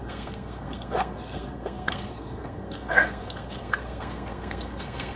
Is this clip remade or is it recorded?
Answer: remade